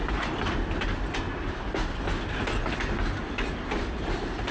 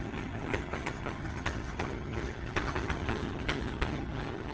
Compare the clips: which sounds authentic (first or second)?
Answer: first